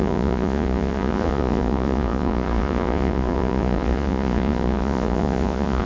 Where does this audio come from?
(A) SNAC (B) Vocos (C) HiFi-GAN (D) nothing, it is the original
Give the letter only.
B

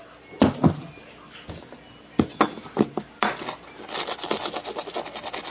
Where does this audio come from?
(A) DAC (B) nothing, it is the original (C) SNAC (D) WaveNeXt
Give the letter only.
B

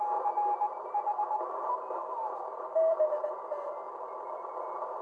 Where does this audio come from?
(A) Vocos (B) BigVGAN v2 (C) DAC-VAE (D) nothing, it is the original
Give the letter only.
B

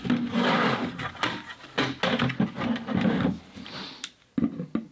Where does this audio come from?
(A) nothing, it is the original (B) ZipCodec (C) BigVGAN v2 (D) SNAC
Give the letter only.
A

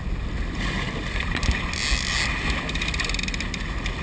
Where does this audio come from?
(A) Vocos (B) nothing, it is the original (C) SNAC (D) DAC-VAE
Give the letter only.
B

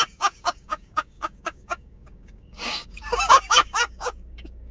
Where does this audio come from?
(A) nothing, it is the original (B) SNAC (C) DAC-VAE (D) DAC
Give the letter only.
D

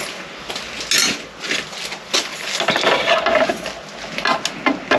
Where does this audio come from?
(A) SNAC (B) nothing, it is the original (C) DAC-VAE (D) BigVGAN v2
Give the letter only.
B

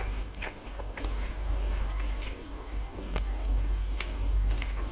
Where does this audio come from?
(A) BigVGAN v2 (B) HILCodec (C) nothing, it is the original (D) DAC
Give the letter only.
D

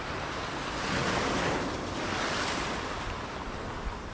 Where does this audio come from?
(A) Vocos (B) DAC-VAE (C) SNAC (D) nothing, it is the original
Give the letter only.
D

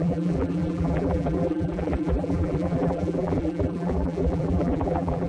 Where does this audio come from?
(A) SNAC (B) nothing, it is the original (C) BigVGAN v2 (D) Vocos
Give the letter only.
C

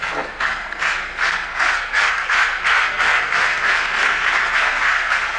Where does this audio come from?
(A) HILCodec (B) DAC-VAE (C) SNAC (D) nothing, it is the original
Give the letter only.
C